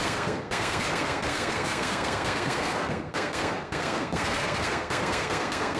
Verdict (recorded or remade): remade